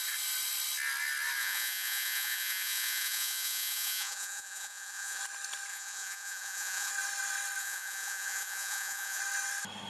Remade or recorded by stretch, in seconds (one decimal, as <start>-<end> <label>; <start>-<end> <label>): 0.0-1.4 recorded; 1.4-5.2 remade; 5.2-5.7 recorded; 5.7-6.9 remade; 6.9-7.6 recorded; 7.6-9.2 remade; 9.2-9.9 recorded